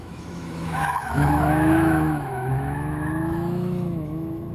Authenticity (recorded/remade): remade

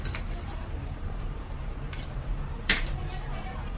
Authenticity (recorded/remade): remade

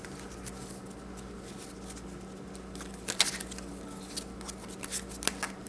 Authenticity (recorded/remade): recorded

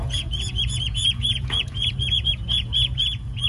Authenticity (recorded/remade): remade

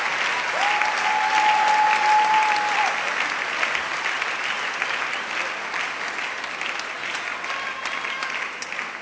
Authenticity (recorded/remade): recorded